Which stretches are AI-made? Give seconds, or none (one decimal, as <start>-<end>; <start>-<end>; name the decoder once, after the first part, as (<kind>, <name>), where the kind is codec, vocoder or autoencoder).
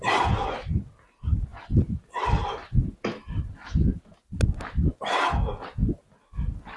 none